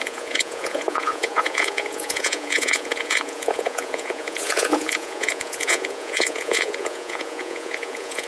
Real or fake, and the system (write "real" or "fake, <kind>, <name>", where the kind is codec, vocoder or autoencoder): fake, vocoder, Vocos